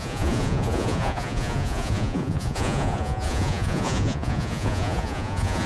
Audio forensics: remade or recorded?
remade